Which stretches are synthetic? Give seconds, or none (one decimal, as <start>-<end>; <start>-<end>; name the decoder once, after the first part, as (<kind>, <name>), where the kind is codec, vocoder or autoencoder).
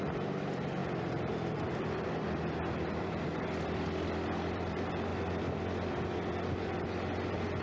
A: 0.0-5.1 (vocoder, BigVGAN v2)